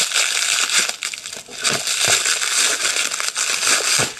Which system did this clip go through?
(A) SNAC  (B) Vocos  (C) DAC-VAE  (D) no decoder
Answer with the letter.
D